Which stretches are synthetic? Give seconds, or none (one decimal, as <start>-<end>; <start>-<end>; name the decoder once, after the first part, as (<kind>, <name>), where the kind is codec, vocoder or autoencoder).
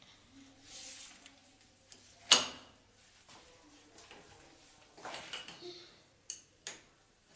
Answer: none